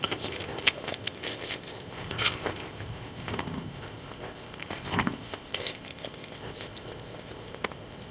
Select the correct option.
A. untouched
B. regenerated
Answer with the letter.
B